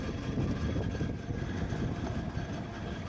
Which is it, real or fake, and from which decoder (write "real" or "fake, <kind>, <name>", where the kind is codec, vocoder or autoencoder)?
real